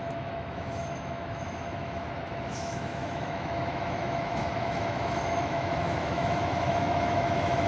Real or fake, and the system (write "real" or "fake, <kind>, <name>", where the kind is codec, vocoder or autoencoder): fake, autoencoder, DAC-VAE